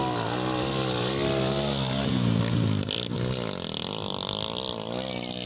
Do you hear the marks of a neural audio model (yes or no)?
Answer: no